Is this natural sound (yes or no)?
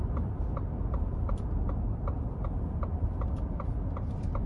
yes